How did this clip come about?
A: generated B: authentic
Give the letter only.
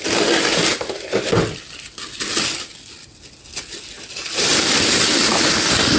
B